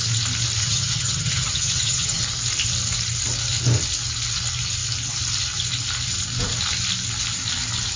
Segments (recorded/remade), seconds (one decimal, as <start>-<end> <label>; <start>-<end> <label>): 0.0-0.6 recorded; 0.6-2.2 remade; 2.2-8.0 recorded